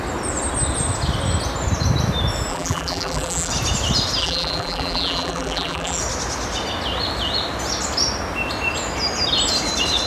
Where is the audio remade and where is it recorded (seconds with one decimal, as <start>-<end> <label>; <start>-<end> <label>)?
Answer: 0.0-2.5 recorded; 2.5-3.5 remade; 3.5-4.2 recorded; 4.2-6.0 remade; 6.0-10.1 recorded